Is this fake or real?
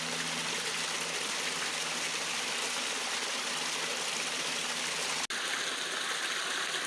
real